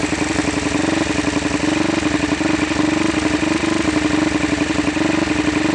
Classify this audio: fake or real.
real